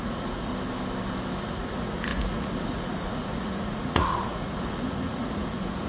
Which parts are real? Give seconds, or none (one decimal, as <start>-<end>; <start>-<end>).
0.5-1.3